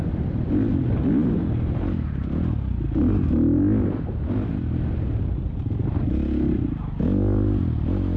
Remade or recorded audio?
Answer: recorded